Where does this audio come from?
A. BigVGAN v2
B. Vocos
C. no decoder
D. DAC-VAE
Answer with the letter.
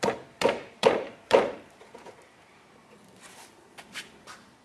A